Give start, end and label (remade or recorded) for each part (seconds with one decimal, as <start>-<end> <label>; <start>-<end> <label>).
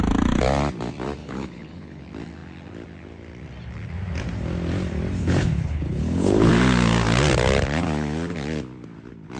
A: 0.0-1.2 recorded; 1.2-2.0 remade; 2.0-5.2 recorded; 5.2-6.5 remade; 6.5-9.4 recorded